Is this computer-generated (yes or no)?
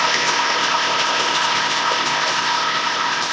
yes